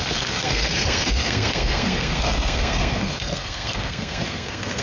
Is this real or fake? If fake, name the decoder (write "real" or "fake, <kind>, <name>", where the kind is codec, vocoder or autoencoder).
fake, codec, SNAC